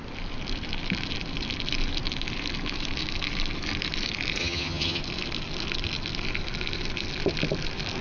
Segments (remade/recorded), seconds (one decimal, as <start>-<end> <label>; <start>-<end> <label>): 0.0-4.4 recorded; 4.4-5.0 remade; 5.0-8.0 recorded